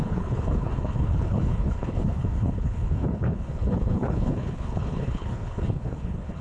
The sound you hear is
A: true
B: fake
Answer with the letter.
B